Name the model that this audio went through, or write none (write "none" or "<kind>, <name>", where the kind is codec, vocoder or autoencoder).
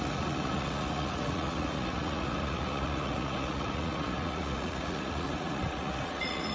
vocoder, Vocos